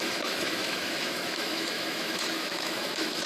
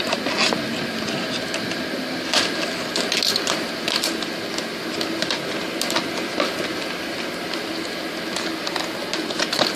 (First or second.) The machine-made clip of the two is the first